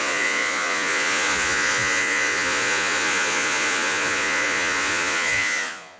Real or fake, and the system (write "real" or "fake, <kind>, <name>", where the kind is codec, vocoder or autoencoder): fake, vocoder, Vocos